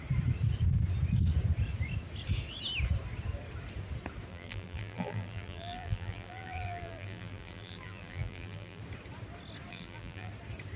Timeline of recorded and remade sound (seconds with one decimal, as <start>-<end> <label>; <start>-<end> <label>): 0.0-4.3 recorded; 4.3-8.8 remade; 8.8-9.7 recorded; 9.7-10.3 remade; 10.3-10.8 recorded